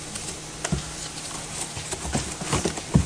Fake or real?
real